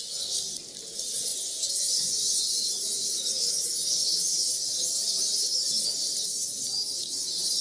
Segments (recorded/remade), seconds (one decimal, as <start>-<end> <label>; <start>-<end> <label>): 0.0-1.3 recorded; 1.3-2.6 remade; 2.6-7.6 recorded